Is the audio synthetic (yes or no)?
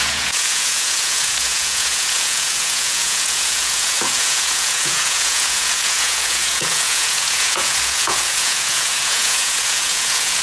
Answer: yes